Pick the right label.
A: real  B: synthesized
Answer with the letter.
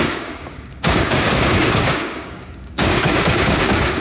B